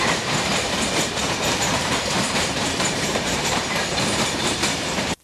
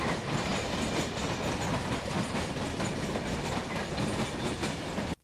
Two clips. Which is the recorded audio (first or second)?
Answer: second